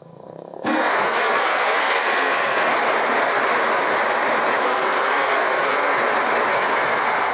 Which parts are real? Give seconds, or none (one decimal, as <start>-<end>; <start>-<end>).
2.7-4.6; 6.0-6.5